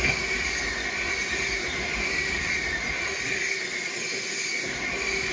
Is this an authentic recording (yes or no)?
yes